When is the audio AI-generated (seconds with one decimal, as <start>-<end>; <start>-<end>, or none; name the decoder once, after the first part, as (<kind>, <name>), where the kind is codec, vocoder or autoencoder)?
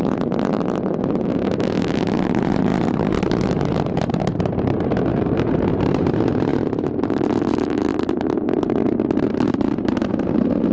0.0-7.9 (vocoder, BigVGAN v2); 8.6-10.7